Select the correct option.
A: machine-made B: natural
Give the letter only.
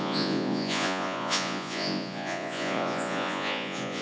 A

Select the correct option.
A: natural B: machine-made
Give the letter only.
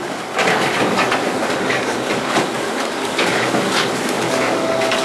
B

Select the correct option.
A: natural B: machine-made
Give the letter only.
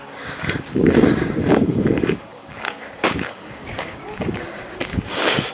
B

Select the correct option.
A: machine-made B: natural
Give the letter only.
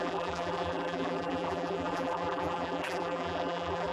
A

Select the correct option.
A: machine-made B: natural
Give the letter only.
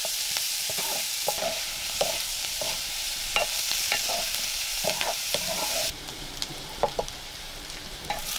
A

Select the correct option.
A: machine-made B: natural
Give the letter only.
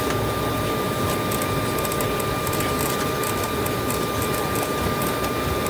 B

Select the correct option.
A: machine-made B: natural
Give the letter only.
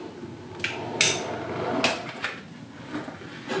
B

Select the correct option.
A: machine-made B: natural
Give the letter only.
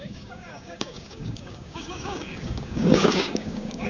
A